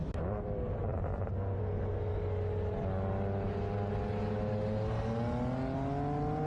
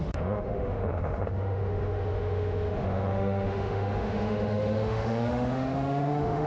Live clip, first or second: first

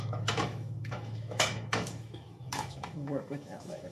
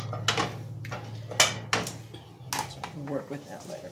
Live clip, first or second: second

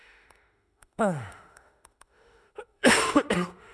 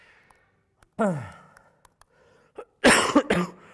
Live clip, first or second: second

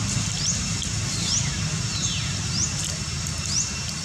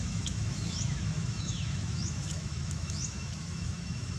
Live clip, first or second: first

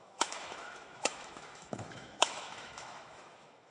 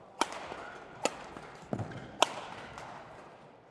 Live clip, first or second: second